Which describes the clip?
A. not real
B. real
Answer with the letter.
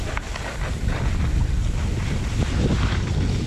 B